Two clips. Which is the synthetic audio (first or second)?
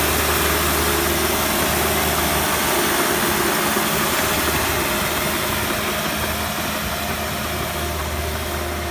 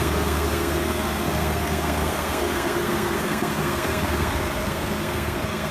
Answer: second